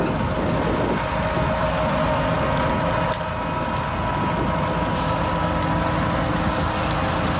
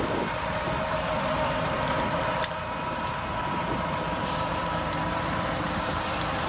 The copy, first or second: second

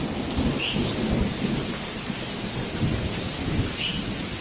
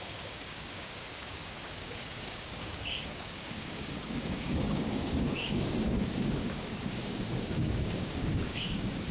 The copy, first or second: second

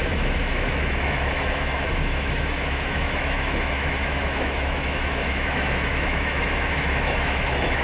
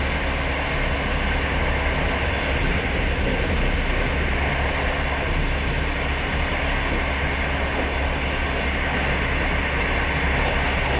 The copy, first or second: first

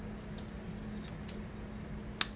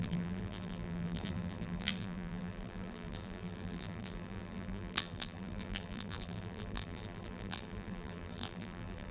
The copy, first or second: second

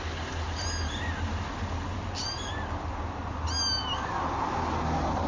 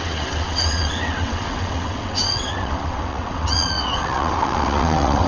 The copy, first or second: second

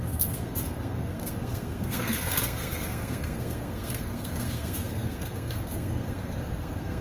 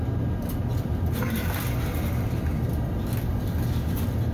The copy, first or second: first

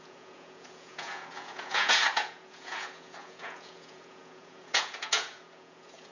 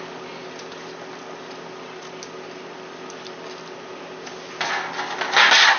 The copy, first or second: first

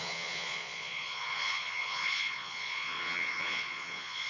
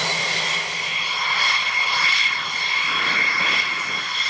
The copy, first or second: first